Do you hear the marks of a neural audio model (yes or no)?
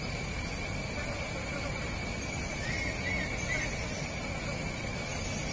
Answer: no